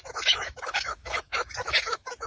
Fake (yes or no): yes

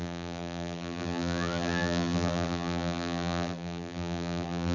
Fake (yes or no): yes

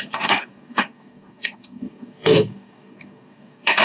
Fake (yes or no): yes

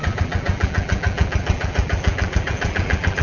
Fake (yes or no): yes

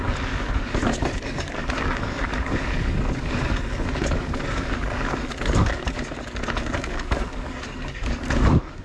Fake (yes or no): yes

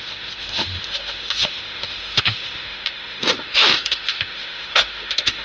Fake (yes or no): yes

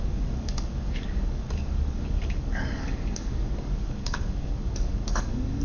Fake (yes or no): yes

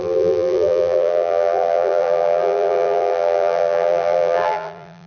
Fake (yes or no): yes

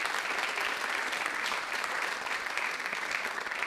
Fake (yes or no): yes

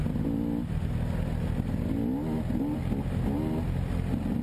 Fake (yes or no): no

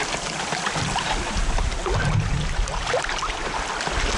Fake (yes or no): no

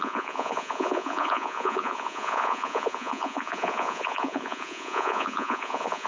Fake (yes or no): yes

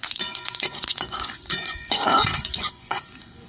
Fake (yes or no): yes